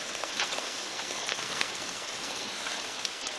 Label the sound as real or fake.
fake